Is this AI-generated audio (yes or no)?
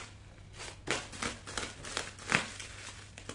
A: no